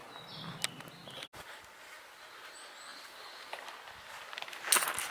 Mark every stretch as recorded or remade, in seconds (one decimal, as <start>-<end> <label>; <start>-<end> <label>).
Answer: 0.0-5.1 recorded